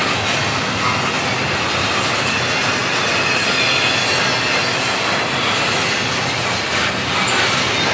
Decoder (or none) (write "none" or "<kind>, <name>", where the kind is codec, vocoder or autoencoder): none